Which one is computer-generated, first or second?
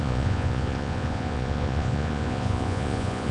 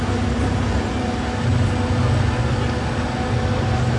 first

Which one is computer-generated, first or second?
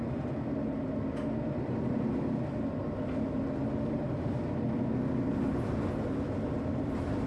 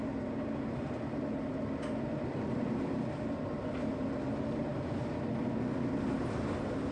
second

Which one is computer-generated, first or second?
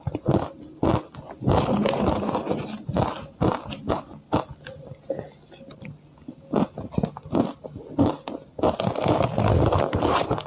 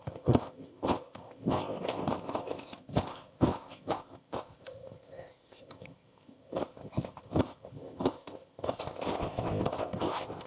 second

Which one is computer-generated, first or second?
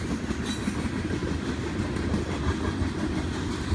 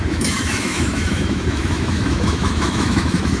second